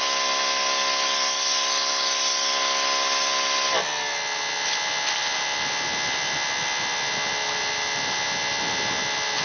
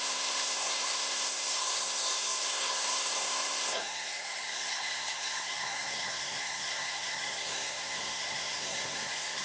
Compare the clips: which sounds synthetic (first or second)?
second